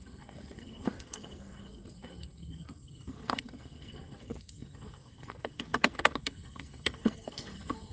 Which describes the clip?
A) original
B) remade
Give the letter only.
B